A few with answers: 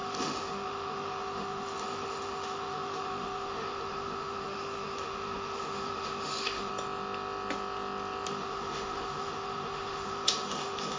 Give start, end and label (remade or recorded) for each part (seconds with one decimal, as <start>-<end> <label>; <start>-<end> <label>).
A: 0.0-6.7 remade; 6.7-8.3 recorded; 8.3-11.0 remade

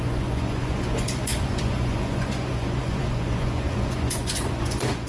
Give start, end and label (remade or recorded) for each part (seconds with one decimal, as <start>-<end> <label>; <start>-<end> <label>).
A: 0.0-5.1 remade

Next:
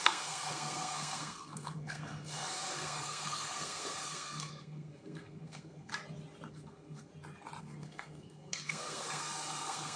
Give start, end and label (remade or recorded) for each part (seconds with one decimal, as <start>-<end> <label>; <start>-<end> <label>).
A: 0.0-5.9 remade; 5.9-6.5 recorded; 6.5-7.1 remade; 7.1-7.6 recorded; 7.6-10.0 remade

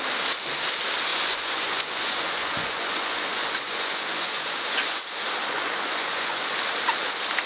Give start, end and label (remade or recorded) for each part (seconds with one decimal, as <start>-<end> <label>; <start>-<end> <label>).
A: 0.0-1.1 recorded; 1.1-5.0 remade; 5.0-5.4 recorded; 5.4-6.5 remade; 6.5-7.5 recorded

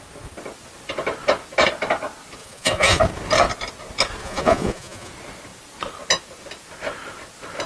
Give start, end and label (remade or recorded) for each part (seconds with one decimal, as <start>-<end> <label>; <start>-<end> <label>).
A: 0.0-2.4 recorded; 2.4-3.0 remade; 3.0-4.2 recorded; 4.2-5.1 remade; 5.1-7.7 recorded

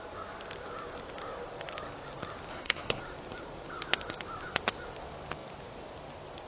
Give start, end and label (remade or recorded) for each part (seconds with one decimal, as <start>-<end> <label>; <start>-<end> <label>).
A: 0.0-2.5 recorded; 2.5-3.0 remade; 3.0-6.5 recorded

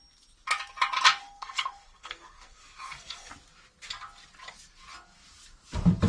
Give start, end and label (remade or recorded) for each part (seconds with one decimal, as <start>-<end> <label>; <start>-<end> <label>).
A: 0.0-1.2 recorded; 1.2-3.3 remade; 3.3-6.1 recorded